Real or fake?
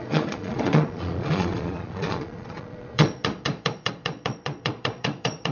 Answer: fake